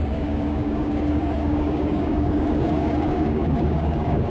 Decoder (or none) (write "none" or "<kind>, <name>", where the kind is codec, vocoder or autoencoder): codec, DAC